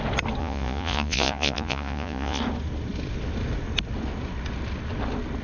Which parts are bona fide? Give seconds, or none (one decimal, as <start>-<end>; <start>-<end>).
0.0-0.4; 2.4-5.4